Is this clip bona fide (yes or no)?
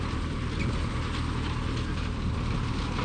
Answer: yes